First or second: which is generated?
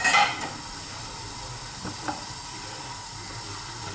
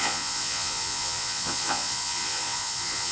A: second